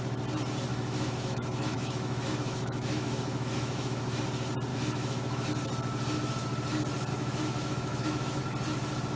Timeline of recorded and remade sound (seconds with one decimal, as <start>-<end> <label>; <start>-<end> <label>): 0.0-0.7 recorded; 0.7-4.2 remade; 4.2-4.7 recorded; 4.7-5.5 remade; 5.5-7.1 recorded; 7.1-8.4 remade; 8.4-9.2 recorded